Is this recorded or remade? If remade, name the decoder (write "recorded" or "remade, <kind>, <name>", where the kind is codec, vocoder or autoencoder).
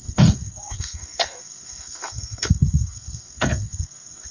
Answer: remade, codec, SNAC